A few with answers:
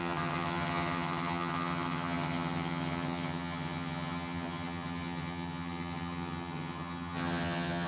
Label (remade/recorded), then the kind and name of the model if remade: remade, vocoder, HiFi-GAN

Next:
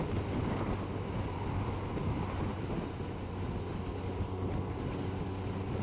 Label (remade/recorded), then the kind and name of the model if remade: recorded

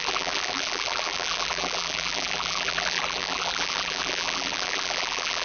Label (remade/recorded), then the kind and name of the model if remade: remade, vocoder, BigVGAN v2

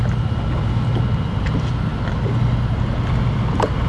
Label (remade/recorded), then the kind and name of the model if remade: recorded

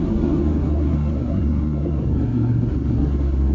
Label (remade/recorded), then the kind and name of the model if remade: remade, codec, SNAC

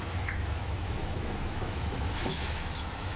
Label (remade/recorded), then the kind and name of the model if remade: remade, autoencoder, DAC-VAE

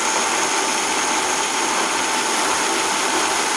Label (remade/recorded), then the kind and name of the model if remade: recorded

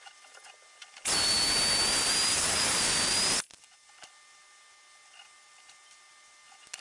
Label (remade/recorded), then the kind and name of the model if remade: recorded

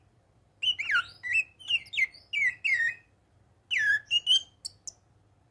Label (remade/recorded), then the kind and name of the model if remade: recorded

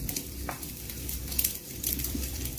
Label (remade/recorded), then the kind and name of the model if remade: remade, vocoder, BigVGAN v2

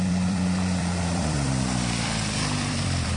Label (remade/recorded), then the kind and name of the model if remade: remade, vocoder, BigVGAN v2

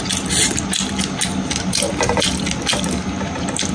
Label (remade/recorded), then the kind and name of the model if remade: recorded